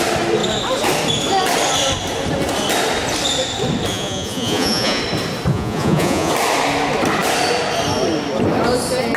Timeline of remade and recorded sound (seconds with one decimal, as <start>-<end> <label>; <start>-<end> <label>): 0.0-3.9 recorded; 3.9-5.0 remade; 5.0-5.5 recorded; 5.5-6.3 remade; 6.3-9.2 recorded